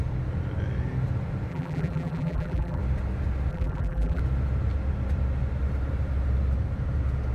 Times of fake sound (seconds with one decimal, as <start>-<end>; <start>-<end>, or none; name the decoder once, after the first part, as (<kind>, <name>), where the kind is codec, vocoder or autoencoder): 1.5-2.8 (vocoder, BigVGAN v2); 3.5-4.2